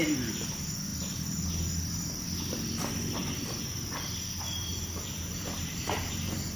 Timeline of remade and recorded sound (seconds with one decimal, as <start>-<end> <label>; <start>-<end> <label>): 0.0-4.7 recorded; 4.7-6.1 remade; 6.1-6.6 recorded